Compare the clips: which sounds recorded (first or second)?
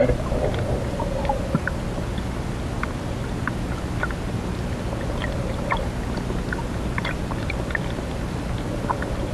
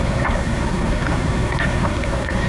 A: first